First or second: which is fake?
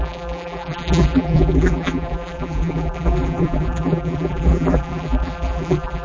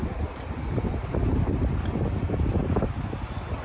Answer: first